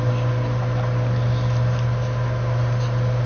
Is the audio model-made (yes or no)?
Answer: no